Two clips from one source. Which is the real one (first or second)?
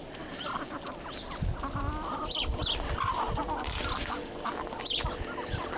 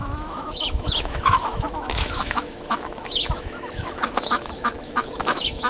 first